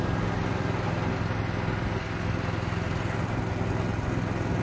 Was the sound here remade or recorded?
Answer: recorded